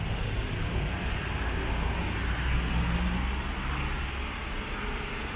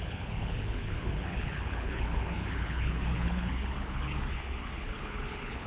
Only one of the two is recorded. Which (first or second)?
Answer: first